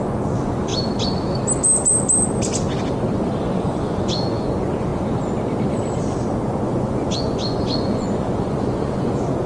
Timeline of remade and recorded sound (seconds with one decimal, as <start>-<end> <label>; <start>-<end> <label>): 0.0-0.7 remade; 0.7-3.4 recorded; 3.4-4.9 remade; 4.9-6.4 recorded; 6.4-9.5 remade